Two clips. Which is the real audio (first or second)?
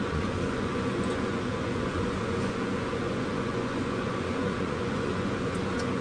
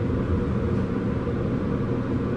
second